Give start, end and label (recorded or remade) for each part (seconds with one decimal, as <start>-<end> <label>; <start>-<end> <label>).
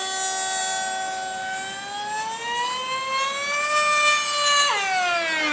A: 0.0-5.5 recorded